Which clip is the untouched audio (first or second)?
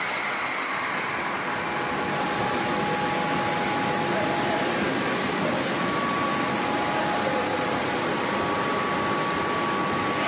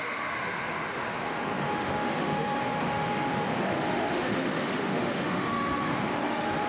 first